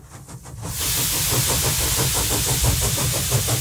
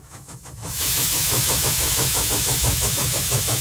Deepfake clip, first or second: second